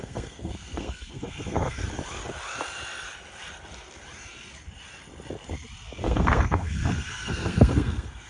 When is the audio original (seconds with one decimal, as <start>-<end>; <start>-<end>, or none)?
1.8-6.0